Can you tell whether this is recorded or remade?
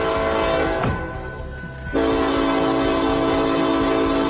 recorded